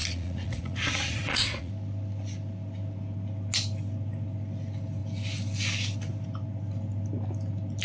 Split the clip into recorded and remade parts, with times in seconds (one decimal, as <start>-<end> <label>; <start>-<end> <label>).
0.0-1.7 remade; 1.7-7.8 recorded

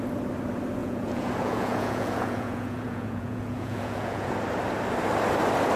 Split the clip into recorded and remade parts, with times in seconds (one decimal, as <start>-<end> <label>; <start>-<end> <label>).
0.0-0.8 recorded; 0.8-4.3 remade; 4.3-5.8 recorded

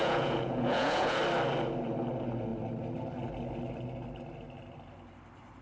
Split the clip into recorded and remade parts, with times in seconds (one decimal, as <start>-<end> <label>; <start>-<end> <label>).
0.0-1.2 remade; 1.2-5.6 recorded

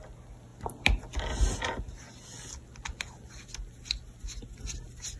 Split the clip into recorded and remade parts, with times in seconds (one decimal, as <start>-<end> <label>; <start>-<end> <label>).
0.0-5.2 recorded